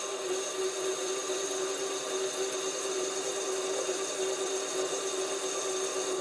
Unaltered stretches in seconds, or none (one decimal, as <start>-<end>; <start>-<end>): 0.0-6.2